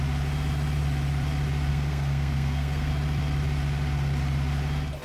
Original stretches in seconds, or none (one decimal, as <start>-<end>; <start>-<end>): 0.0-1.7; 2.9-5.0